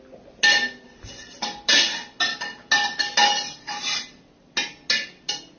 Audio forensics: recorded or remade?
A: recorded